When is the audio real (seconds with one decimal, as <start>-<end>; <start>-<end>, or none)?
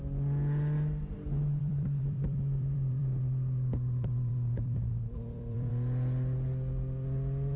0.0-1.6; 5.7-7.6